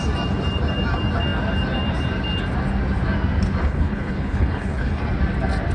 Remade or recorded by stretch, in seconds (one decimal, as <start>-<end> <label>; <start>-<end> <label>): 0.0-3.6 recorded; 3.6-5.0 remade; 5.0-5.7 recorded